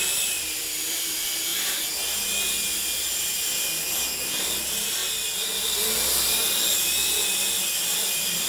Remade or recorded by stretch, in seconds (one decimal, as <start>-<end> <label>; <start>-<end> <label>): 0.0-1.5 remade; 1.5-4.6 recorded; 4.6-5.0 remade; 5.0-5.6 recorded; 5.6-6.4 remade; 6.4-7.6 recorded; 7.6-8.5 remade